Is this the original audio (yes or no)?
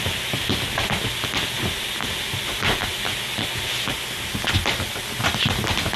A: yes